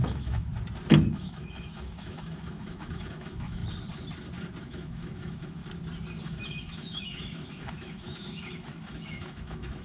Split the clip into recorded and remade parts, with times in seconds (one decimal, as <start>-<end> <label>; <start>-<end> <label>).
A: 0.0-0.5 remade; 0.5-1.1 recorded; 1.1-3.6 remade; 3.6-4.6 recorded; 4.6-5.6 remade; 5.6-6.2 recorded; 6.2-9.8 remade